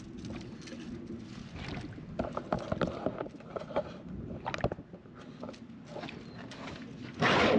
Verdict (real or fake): real